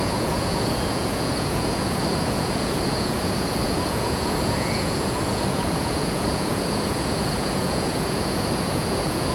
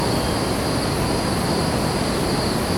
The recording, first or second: second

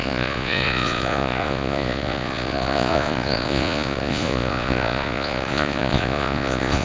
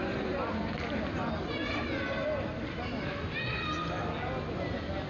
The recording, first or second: second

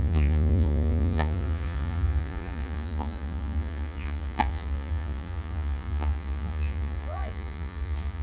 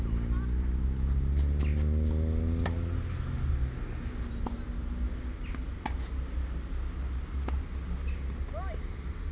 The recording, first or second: second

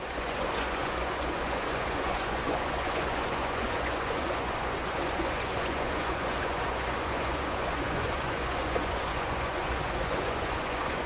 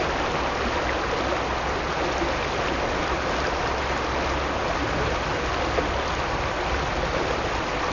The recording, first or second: second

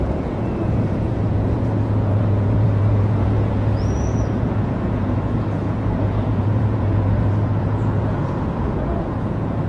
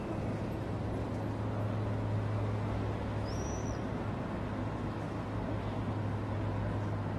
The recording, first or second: second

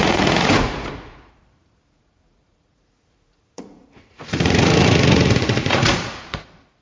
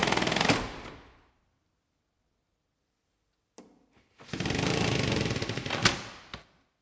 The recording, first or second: second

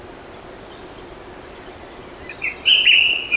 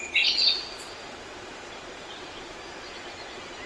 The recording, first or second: first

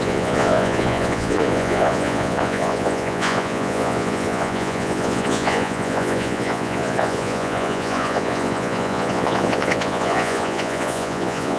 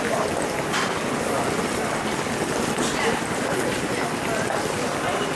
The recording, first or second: second